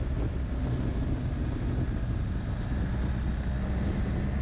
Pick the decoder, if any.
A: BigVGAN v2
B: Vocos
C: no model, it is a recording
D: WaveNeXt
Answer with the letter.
C